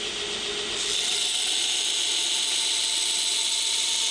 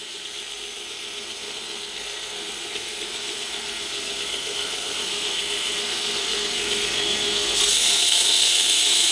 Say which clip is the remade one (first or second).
second